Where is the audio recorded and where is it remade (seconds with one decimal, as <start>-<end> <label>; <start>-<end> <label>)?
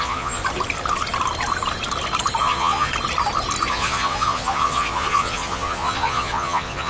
0.0-0.4 remade; 0.4-2.4 recorded; 2.4-2.9 remade; 2.9-3.7 recorded; 3.7-6.9 remade